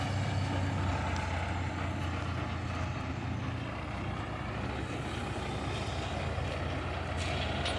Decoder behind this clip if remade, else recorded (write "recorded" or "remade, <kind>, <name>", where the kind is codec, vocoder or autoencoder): recorded